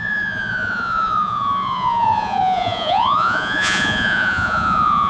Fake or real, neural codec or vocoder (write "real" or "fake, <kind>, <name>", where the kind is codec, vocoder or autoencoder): fake, vocoder, Vocos